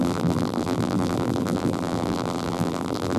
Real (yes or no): no